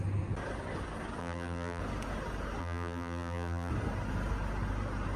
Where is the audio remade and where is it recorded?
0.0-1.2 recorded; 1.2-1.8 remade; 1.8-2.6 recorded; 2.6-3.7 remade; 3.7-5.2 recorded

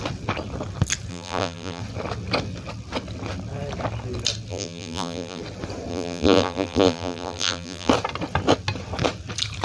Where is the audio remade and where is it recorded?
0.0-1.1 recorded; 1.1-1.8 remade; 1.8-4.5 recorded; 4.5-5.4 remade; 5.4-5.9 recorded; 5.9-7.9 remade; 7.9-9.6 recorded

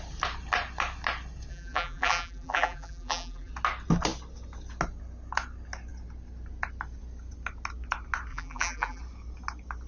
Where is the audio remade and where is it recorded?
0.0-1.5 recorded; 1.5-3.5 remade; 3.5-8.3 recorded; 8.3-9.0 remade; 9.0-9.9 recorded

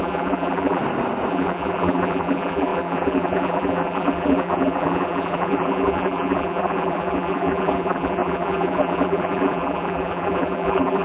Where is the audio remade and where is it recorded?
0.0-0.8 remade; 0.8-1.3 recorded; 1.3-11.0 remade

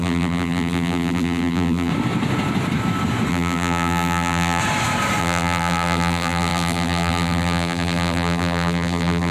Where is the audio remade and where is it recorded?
0.0-1.9 remade; 1.9-3.3 recorded; 3.3-4.6 remade; 4.6-5.2 recorded; 5.2-9.3 remade